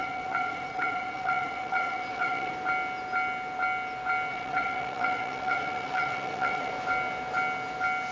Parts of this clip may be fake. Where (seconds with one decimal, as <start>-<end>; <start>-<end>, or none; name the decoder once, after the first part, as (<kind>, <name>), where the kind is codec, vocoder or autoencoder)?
0.0-2.5 (vocoder, WaveNeXt); 4.3-6.7